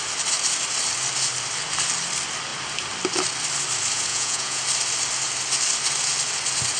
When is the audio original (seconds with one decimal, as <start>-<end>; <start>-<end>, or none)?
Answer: 0.0-4.1; 4.6-6.8